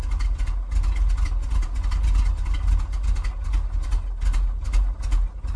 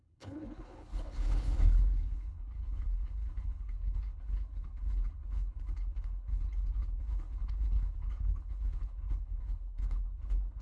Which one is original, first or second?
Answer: first